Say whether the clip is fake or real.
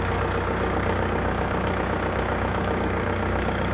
fake